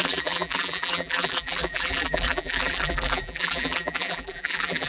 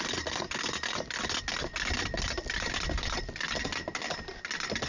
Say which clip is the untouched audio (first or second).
second